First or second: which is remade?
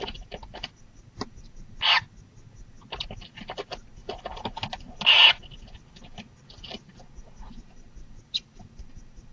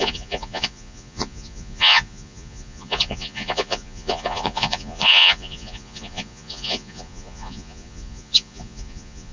second